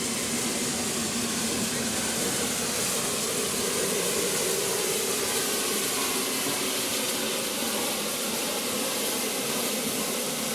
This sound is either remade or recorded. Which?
recorded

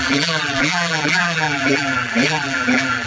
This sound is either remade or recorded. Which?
remade